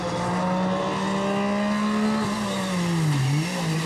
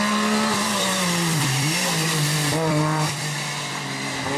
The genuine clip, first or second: first